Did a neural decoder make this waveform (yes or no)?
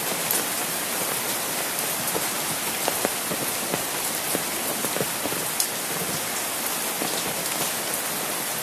no